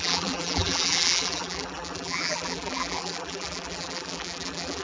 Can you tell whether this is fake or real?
fake